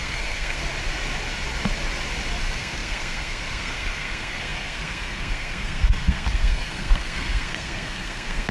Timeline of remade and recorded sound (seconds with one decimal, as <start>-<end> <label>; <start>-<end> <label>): 0.0-0.6 remade; 0.6-2.4 recorded; 2.4-8.5 remade